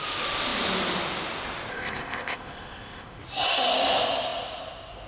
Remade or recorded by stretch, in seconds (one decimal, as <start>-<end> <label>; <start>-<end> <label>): 0.0-1.7 recorded; 1.7-3.2 remade; 3.2-5.1 recorded